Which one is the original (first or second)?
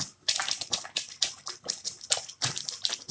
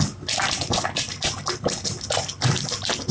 second